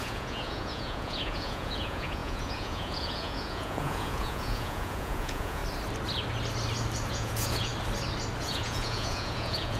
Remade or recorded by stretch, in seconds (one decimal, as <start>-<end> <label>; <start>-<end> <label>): 0.0-5.6 remade; 5.6-7.1 recorded; 7.1-7.7 remade; 7.7-8.4 recorded; 8.4-9.8 remade